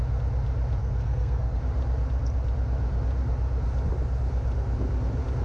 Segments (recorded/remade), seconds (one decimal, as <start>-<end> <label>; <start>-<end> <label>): 0.0-0.8 recorded; 0.8-1.6 remade; 1.6-5.4 recorded